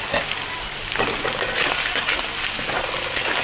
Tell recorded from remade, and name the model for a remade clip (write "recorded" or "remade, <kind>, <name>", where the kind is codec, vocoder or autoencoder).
recorded